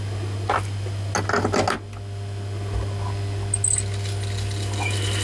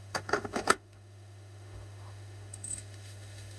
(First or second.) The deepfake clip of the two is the second